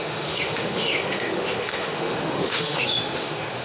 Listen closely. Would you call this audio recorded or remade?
remade